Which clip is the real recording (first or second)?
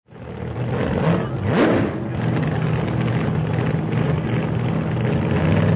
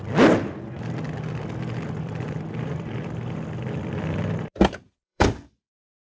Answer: first